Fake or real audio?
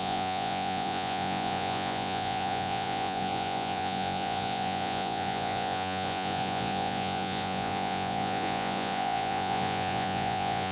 fake